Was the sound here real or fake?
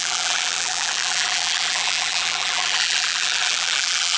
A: fake